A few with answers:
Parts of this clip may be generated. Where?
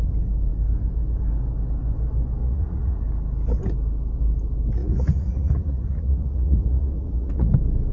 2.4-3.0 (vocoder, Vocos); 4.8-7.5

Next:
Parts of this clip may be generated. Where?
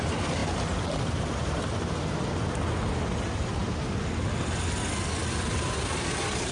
none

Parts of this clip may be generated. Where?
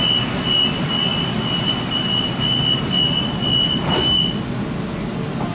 none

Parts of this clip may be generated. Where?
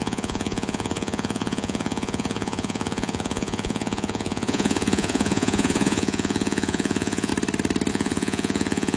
0.0-7.3 (vocoder, Vocos); 7.9-9.0